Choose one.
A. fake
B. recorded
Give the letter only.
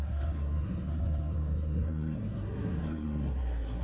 A